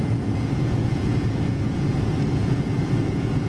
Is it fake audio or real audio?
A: fake